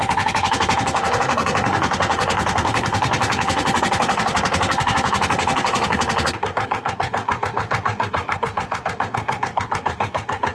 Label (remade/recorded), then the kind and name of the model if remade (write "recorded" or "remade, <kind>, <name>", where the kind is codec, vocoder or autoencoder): remade, codec, SNAC